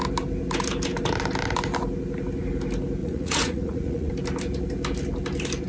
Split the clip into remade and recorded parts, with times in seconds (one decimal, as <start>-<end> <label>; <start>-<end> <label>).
0.0-3.0 recorded; 3.0-4.1 remade; 4.1-5.7 recorded